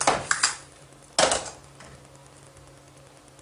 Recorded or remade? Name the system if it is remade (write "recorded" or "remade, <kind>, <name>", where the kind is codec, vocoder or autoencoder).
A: recorded